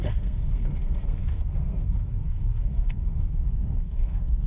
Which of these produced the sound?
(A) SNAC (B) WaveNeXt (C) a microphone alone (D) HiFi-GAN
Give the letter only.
A